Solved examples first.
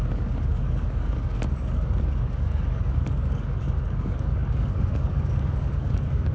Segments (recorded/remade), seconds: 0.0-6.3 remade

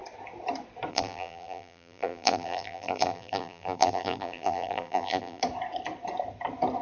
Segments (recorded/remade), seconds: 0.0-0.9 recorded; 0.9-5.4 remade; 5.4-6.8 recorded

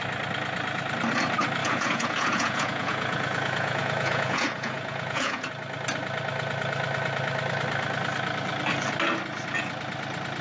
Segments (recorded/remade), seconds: 0.0-1.6 recorded; 1.6-5.5 remade; 5.5-10.4 recorded